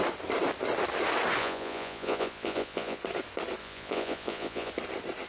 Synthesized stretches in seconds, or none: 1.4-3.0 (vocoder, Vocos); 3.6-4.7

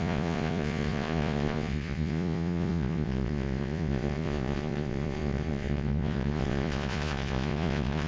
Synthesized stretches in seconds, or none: 0.0-8.1 (vocoder, Vocos)

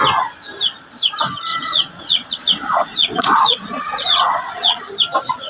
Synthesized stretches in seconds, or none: 1.5-4.8 (vocoder, Vocos)